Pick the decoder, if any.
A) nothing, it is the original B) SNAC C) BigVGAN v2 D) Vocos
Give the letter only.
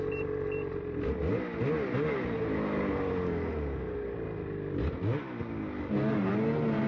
A